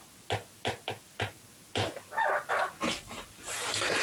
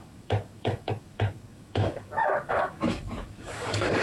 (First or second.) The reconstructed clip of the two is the second